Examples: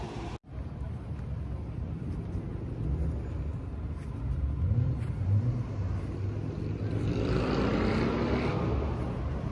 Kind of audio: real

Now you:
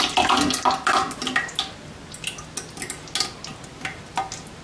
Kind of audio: real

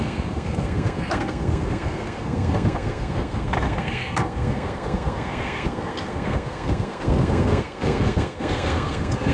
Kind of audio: fake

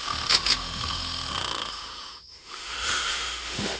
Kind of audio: fake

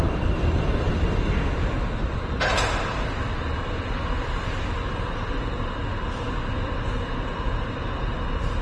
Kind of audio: real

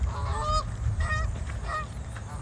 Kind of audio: fake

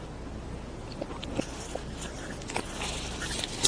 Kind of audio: real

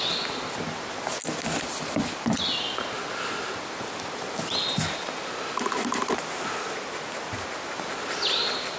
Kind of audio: real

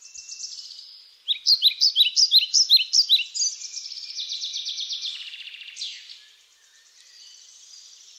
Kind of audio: real